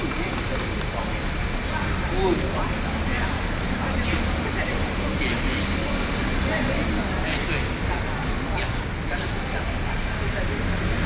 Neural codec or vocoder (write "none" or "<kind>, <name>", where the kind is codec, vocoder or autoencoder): none